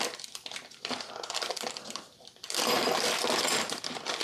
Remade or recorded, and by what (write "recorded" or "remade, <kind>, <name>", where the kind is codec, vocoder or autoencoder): recorded